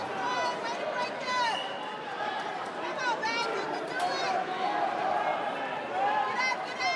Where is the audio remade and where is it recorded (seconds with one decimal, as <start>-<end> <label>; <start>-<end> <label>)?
0.0-5.3 remade; 5.3-6.3 recorded; 6.3-7.0 remade